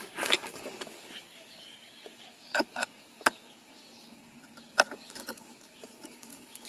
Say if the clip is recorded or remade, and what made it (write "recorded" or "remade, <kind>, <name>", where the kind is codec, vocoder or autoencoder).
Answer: remade, codec, DAC